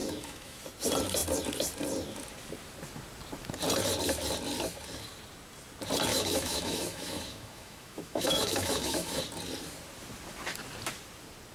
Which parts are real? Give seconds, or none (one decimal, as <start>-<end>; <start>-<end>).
0.6-6.1; 9.2-11.5